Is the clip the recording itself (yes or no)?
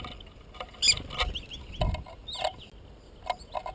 yes